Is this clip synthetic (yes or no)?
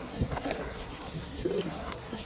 yes